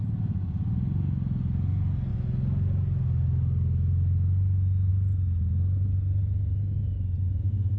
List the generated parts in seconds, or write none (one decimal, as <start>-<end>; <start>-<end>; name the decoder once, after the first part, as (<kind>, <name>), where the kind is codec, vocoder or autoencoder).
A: none